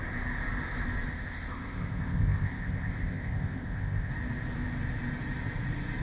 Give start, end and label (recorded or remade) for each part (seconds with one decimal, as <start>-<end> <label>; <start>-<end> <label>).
0.0-1.1 recorded; 1.1-4.1 remade; 4.1-6.0 recorded

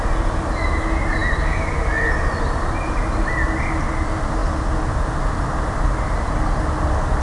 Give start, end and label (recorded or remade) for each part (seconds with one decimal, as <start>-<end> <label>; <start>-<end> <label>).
0.0-7.2 recorded

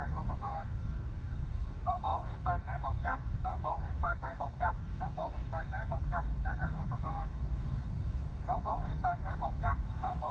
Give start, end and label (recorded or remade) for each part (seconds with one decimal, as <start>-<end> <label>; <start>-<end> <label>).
0.0-10.3 remade

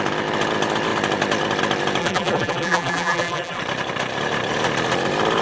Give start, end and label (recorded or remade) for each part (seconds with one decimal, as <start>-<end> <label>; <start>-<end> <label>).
0.0-2.0 recorded; 2.0-3.6 remade; 3.6-5.4 recorded